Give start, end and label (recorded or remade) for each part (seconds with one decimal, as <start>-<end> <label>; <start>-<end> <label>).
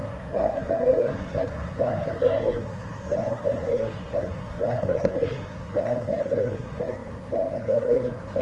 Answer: 0.0-8.4 remade